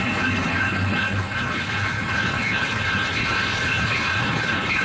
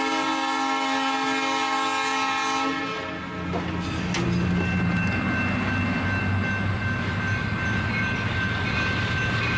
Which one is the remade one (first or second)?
first